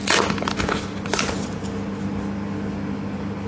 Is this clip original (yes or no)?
yes